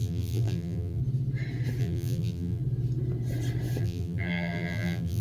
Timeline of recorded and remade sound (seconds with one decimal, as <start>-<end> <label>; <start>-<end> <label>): 0.0-1.0 remade; 1.0-1.8 recorded; 1.8-2.6 remade; 2.6-3.8 recorded; 3.8-5.2 remade